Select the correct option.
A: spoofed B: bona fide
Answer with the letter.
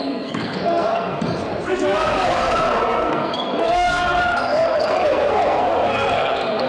A